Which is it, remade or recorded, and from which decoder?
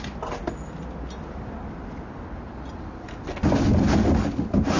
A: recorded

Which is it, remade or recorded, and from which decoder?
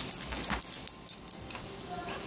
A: recorded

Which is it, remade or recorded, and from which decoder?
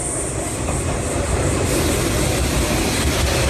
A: recorded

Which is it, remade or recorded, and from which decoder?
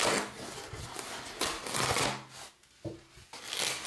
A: recorded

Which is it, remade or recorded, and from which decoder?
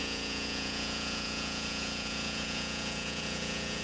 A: remade, vocoder, Vocos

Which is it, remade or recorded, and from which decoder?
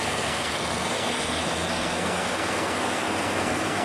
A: remade, codec, SNAC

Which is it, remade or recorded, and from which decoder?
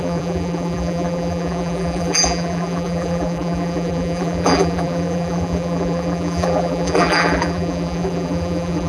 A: remade, vocoder, BigVGAN v2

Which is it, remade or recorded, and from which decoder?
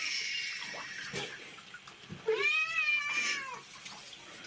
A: recorded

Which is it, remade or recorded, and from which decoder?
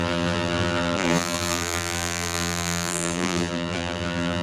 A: remade, vocoder, BigVGAN v2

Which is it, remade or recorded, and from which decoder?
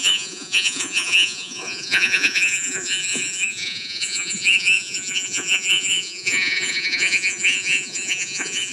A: remade, vocoder, Vocos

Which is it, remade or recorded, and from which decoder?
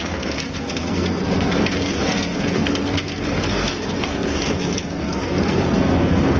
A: remade, codec, SNAC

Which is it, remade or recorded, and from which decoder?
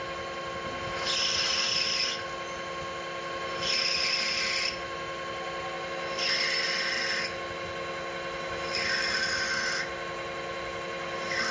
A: recorded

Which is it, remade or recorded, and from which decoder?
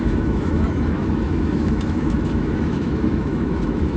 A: remade, autoencoder, DAC-VAE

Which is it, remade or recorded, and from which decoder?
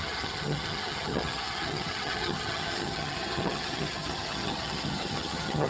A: remade, vocoder, HiFi-GAN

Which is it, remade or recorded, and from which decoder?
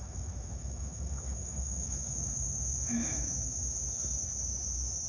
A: remade, autoencoder, DAC-VAE